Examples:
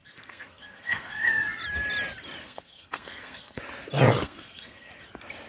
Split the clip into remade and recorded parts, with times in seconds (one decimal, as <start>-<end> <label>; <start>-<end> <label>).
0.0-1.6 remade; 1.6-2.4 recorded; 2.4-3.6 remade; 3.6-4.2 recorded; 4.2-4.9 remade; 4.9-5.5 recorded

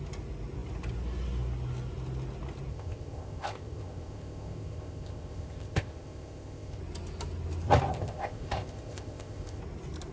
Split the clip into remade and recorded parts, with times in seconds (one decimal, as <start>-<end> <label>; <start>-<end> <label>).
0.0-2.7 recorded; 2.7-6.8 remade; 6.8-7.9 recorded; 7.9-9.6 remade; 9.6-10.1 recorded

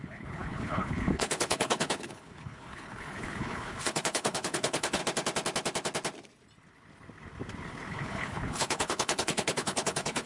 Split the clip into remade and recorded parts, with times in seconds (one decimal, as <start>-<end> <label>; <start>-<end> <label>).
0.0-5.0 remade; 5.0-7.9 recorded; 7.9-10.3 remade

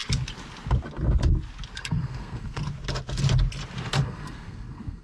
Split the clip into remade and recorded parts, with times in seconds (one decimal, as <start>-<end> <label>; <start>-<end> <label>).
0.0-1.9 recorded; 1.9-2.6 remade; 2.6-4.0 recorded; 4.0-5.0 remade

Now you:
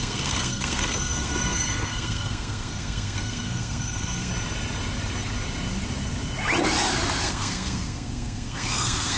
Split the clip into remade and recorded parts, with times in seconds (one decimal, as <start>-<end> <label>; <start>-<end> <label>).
0.0-4.3 remade; 4.3-7.2 recorded; 7.2-9.2 remade

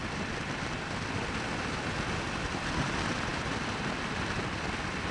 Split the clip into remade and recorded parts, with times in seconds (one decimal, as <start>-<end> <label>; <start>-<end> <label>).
0.0-5.1 recorded

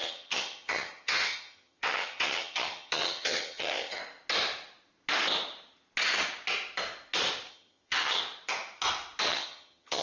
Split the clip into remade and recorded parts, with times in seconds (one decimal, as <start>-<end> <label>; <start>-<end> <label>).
0.0-4.0 remade; 4.0-7.5 recorded; 7.5-8.2 remade; 8.2-9.3 recorded; 9.3-10.0 remade